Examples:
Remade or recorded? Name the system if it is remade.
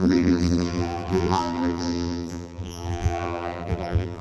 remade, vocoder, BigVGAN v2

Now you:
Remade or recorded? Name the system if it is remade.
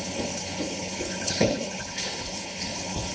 remade, codec, HILCodec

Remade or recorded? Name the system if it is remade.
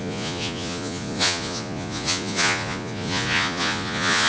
remade, vocoder, Vocos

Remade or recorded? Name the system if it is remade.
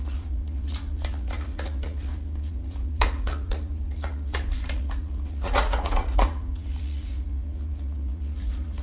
remade, vocoder, Vocos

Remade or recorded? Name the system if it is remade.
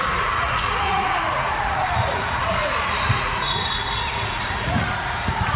remade, vocoder, Vocos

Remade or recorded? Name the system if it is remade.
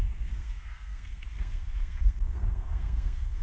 remade, codec, SNAC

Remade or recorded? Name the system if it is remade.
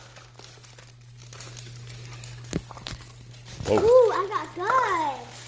recorded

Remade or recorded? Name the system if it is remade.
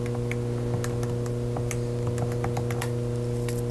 recorded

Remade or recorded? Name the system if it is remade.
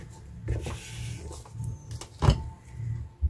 recorded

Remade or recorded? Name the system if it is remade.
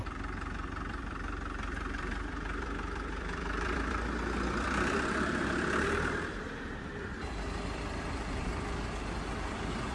remade, vocoder, BigVGAN v2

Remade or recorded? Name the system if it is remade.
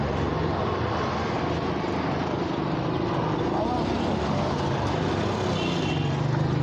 recorded